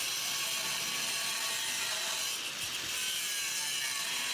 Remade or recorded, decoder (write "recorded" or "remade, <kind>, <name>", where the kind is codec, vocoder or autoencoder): recorded